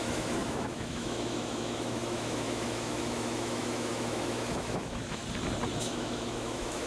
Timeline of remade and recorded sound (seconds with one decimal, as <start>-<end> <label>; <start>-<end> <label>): 0.0-5.2 remade; 5.2-5.8 recorded; 5.8-6.9 remade